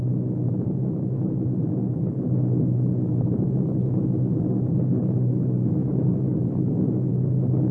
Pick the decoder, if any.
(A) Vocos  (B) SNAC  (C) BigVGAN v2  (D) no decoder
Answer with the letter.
D